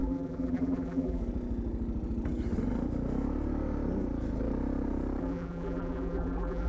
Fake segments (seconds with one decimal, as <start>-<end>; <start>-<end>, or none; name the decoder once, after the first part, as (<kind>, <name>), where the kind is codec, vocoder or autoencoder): 0.0-1.2 (vocoder, BigVGAN v2); 5.2-6.7